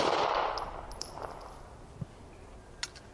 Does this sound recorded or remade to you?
recorded